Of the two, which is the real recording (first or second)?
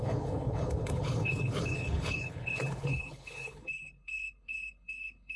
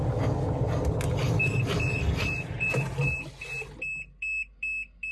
second